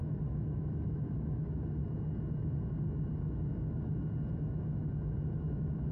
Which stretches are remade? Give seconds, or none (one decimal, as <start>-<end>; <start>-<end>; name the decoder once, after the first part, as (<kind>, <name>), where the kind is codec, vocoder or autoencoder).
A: 0.0-1.8 (autoencoder, DAC-VAE); 5.3-5.9